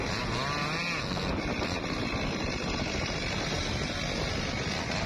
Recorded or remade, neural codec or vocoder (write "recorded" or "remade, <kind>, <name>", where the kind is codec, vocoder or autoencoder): recorded